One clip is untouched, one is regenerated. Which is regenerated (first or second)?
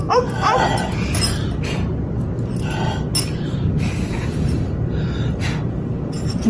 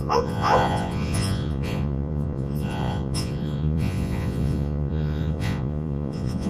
second